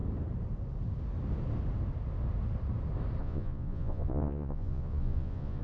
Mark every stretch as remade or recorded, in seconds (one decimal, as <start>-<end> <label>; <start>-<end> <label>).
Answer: 0.0-3.2 recorded; 3.2-5.6 remade